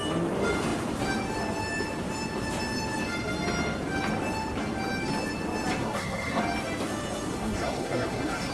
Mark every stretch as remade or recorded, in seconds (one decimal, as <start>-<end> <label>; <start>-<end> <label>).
0.0-5.8 recorded; 5.8-6.4 remade; 6.4-7.3 recorded; 7.3-8.5 remade